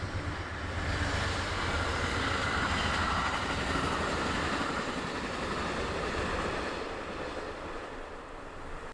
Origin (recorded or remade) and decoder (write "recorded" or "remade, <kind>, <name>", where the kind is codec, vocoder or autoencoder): recorded